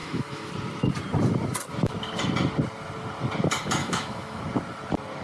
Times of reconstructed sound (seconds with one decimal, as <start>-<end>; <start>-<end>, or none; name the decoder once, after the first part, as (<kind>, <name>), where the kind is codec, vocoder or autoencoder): 0.0-0.5 (autoencoder, DAC-VAE); 3.8-4.4